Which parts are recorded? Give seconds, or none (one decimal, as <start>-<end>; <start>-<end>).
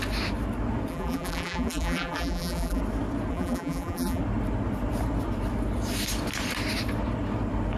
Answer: 0.0-0.9; 2.8-3.3; 4.2-7.8